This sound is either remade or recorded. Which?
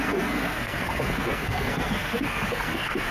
remade